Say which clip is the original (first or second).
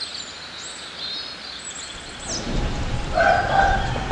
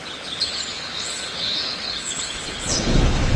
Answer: first